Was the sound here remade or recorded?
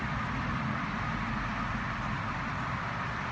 recorded